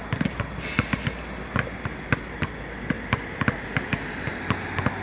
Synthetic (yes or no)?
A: no